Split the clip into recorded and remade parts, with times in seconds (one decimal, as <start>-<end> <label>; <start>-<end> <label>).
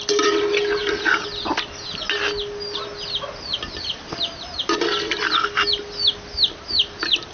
0.0-0.8 remade; 0.8-3.8 recorded; 3.8-7.3 remade